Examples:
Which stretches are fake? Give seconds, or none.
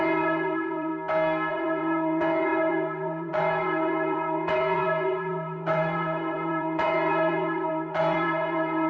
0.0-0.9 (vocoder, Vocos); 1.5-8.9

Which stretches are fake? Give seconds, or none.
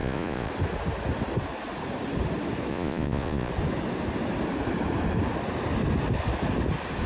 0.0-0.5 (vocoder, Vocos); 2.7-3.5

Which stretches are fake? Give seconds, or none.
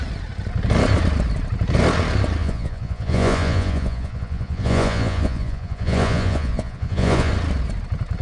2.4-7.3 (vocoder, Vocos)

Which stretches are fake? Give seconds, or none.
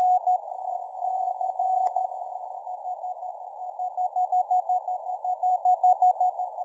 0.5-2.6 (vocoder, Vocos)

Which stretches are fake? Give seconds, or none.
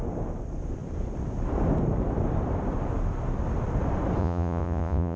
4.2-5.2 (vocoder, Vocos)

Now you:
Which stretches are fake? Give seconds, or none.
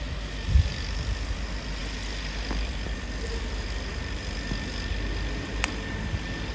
none